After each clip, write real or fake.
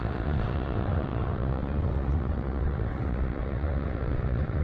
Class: fake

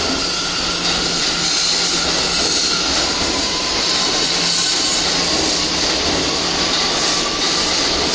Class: real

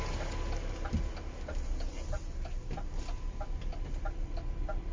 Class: real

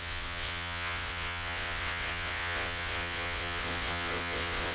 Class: fake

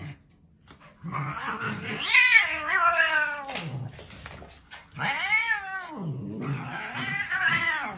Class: real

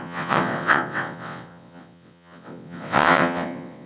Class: fake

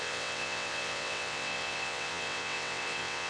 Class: fake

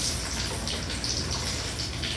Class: real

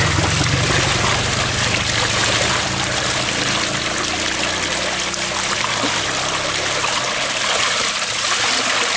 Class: real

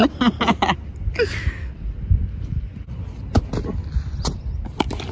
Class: real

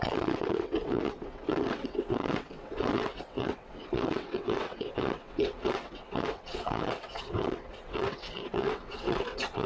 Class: fake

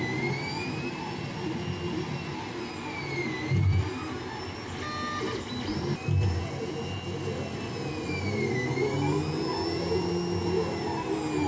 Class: real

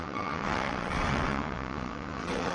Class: fake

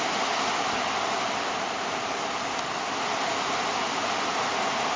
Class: real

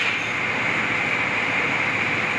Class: real